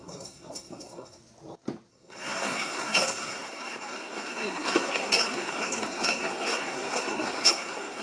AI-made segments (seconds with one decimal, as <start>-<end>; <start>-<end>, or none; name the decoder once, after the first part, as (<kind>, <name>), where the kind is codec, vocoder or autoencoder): 0.0-1.2 (codec, SNAC); 1.9-8.0